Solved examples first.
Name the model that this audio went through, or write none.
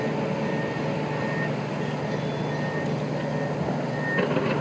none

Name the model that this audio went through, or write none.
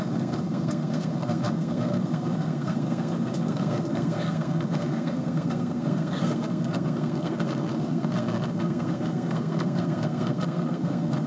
codec, SNAC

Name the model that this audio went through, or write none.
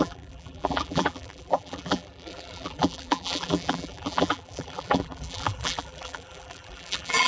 vocoder, BigVGAN v2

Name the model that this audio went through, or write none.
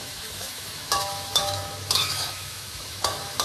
autoencoder, DAC-VAE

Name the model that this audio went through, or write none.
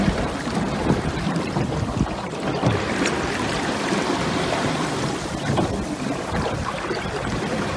none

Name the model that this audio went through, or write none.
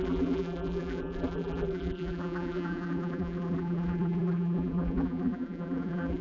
vocoder, BigVGAN v2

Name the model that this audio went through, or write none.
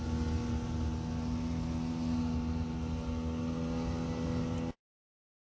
none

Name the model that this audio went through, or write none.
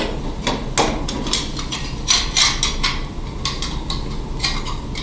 none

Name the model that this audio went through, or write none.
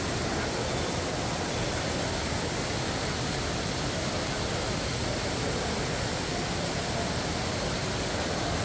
none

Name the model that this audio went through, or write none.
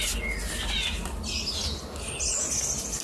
none